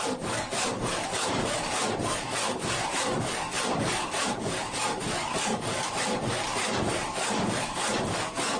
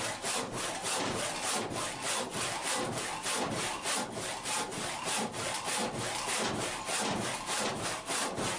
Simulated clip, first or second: first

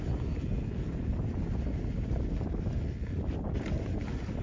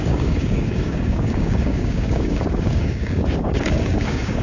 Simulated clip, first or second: second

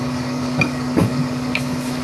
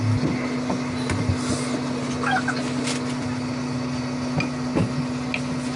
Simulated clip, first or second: first